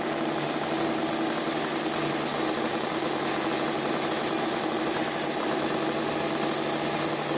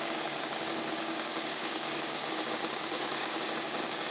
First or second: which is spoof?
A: second